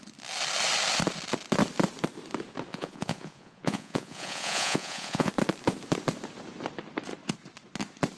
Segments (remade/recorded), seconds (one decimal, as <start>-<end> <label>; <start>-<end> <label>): 0.0-2.7 recorded; 2.7-5.3 remade; 5.3-8.2 recorded